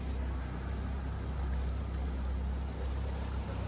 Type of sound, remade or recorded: recorded